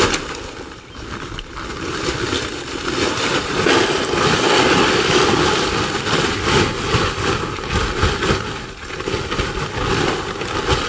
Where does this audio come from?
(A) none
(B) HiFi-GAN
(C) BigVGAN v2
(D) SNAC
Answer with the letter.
A